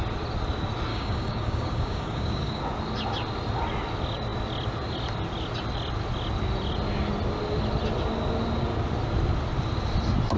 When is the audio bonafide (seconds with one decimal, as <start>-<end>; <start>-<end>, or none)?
0.0-0.9; 2.6-10.4